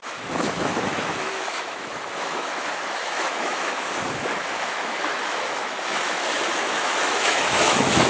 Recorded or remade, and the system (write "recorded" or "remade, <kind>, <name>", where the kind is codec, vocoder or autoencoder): remade, autoencoder, DAC-VAE